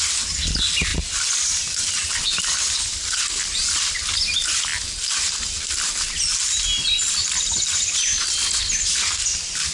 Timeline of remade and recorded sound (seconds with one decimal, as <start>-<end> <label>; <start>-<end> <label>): 0.0-0.9 recorded; 0.9-1.9 remade; 1.9-9.7 recorded